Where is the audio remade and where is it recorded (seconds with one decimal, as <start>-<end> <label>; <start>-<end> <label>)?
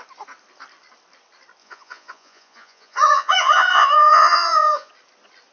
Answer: 0.0-1.6 recorded; 1.6-4.9 remade; 4.9-5.5 recorded